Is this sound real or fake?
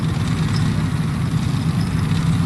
real